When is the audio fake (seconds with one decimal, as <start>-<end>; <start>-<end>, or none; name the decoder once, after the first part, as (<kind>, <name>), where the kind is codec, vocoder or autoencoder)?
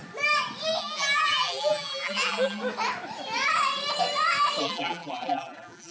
0.8-2.6 (vocoder, BigVGAN v2); 4.6-5.9